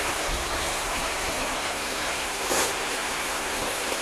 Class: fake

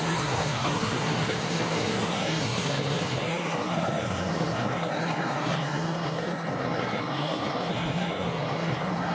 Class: fake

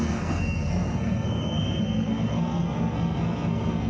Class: fake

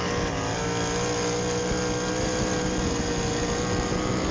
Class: real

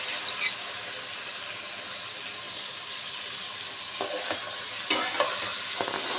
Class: real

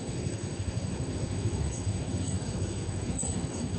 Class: fake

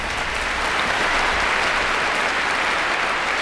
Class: real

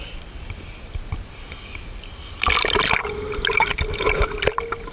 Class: real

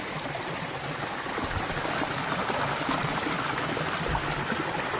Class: real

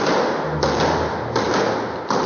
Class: real